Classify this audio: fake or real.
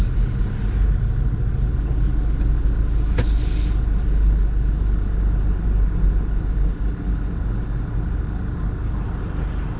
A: real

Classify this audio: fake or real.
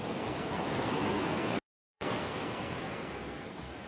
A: fake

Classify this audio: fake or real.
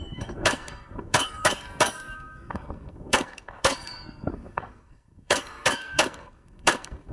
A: fake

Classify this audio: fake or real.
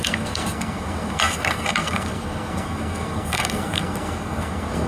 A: fake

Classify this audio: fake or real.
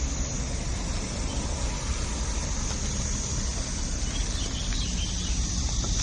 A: real